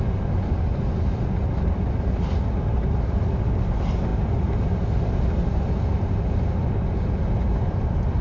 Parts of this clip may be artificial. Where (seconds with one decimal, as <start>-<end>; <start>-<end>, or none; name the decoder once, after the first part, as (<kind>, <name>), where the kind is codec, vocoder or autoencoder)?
none